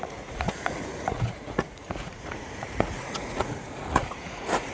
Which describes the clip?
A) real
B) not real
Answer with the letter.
B